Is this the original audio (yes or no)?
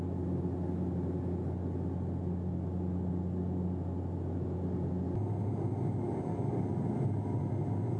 yes